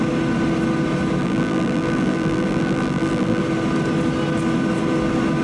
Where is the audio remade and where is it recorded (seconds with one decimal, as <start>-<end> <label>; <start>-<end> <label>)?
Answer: 0.0-1.2 recorded; 1.2-3.4 remade; 3.4-5.4 recorded